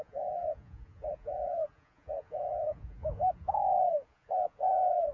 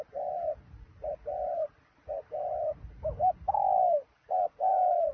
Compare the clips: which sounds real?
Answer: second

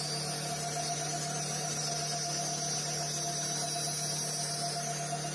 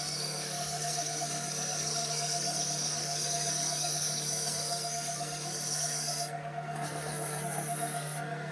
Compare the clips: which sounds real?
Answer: first